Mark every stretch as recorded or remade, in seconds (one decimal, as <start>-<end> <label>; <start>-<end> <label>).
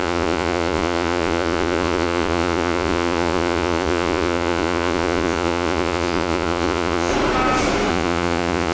0.0-7.1 remade; 7.1-7.9 recorded; 7.9-8.7 remade